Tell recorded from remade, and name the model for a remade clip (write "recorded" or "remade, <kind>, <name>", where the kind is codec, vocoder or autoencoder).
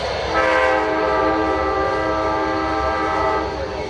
recorded